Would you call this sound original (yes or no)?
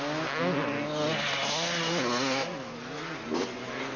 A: yes